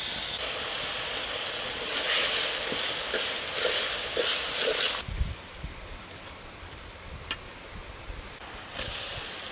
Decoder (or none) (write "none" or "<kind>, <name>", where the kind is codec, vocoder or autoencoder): none